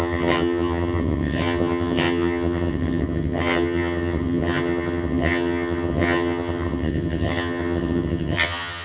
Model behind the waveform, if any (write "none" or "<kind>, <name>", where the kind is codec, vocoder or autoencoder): vocoder, HiFi-GAN